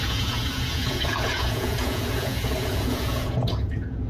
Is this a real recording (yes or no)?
no